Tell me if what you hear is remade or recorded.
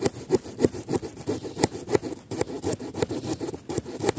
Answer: recorded